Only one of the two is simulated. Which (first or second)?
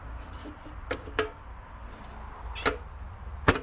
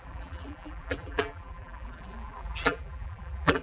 second